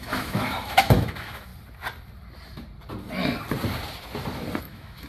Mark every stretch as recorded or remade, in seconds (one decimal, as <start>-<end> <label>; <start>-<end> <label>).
0.0-1.5 remade; 1.5-4.6 recorded; 4.6-5.1 remade